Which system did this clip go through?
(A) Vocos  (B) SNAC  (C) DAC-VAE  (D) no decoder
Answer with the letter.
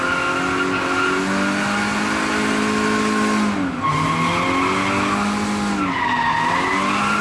D